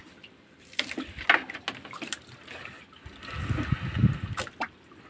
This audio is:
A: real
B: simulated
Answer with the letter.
A